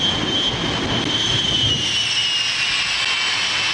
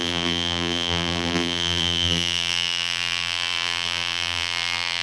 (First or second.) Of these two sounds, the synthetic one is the second